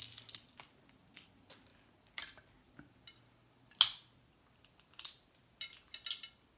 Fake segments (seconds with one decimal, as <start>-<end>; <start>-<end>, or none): none